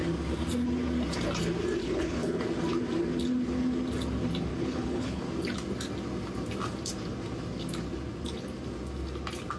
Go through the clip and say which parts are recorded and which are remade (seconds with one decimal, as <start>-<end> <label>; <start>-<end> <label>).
0.0-1.8 recorded; 1.8-2.4 remade; 2.4-4.5 recorded; 4.5-5.2 remade; 5.2-9.6 recorded